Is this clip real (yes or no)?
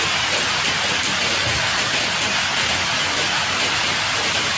yes